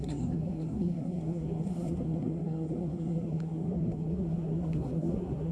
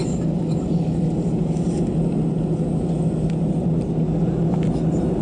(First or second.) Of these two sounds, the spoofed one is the first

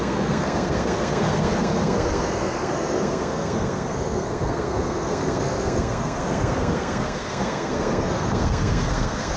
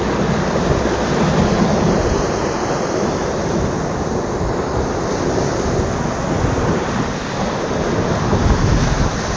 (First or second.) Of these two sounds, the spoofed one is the first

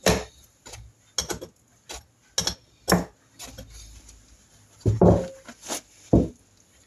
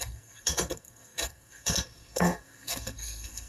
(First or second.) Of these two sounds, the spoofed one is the second